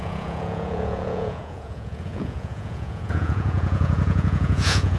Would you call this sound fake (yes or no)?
yes